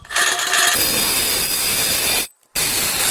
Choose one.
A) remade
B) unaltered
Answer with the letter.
B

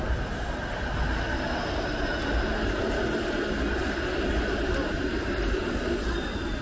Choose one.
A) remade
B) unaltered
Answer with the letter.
B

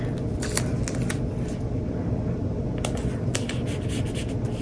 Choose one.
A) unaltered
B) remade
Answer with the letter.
A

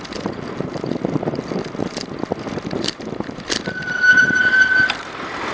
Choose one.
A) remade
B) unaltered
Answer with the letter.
A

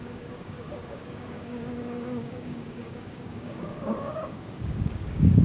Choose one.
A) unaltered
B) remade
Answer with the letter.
B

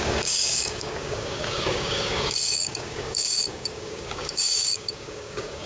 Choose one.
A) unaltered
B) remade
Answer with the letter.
B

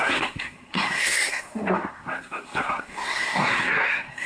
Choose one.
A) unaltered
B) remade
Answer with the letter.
B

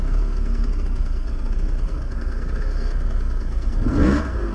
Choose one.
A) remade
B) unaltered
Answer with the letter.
A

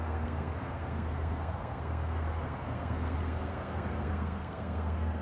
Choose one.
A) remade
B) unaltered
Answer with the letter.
A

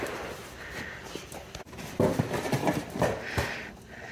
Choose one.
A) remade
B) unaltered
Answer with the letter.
B